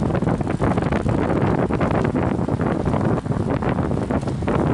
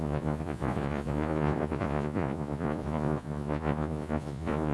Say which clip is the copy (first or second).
second